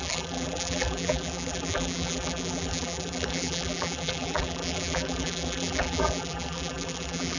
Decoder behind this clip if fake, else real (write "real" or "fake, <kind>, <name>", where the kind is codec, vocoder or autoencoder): fake, vocoder, BigVGAN v2